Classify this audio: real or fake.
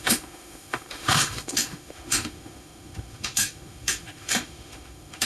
fake